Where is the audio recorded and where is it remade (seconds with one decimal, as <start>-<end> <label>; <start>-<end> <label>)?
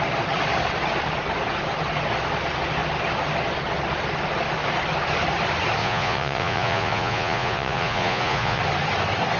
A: 0.0-5.8 recorded; 5.8-8.6 remade; 8.6-9.4 recorded